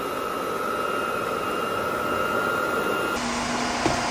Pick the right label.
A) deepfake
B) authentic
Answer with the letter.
B